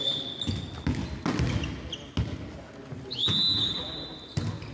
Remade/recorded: recorded